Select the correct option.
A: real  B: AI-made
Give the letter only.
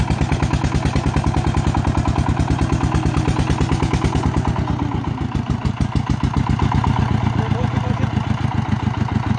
A